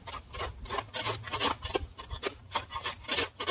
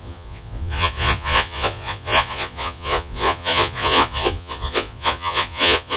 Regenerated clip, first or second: second